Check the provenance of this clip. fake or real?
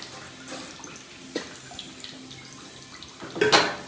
real